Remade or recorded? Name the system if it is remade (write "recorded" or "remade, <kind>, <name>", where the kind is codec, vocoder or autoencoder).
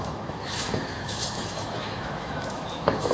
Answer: remade, autoencoder, DAC-VAE